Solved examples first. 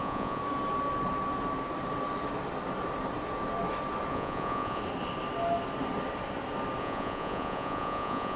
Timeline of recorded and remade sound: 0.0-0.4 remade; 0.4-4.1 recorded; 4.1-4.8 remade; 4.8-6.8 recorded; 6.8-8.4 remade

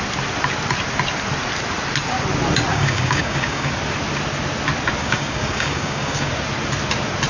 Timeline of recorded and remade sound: 0.0-2.7 recorded; 2.7-3.7 remade; 3.7-5.0 recorded; 5.0-6.3 remade; 6.3-7.3 recorded

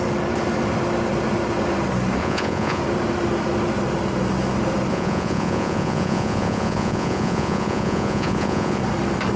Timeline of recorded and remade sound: 0.0-2.2 recorded; 2.2-2.8 remade; 2.8-4.9 recorded; 4.9-8.8 remade; 8.8-9.4 recorded